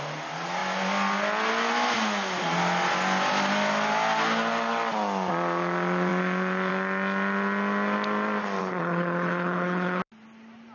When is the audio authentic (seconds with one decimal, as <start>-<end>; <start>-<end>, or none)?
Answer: 0.0-8.6; 10.0-10.7